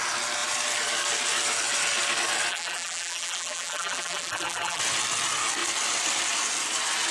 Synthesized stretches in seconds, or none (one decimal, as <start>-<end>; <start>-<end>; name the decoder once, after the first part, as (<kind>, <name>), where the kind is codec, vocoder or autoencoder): 2.5-4.8 (vocoder, BigVGAN v2)